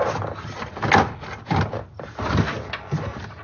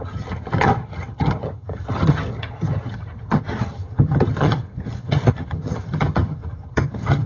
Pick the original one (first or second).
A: first